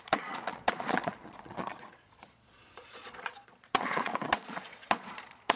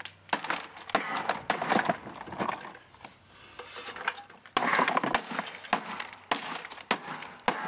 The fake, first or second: first